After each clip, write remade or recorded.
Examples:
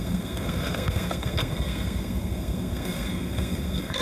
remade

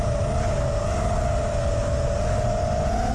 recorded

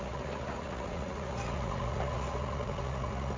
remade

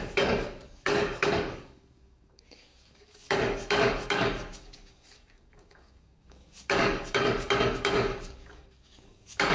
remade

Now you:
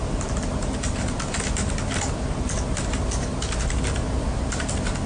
recorded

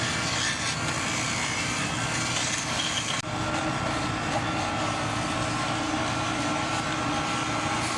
recorded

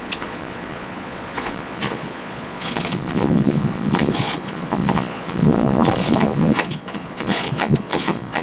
remade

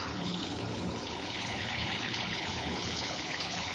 remade